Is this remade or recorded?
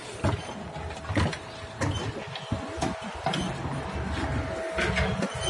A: recorded